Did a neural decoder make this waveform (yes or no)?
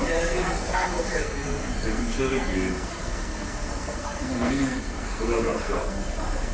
yes